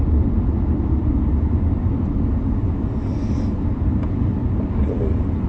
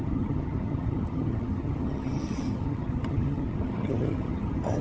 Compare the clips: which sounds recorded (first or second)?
first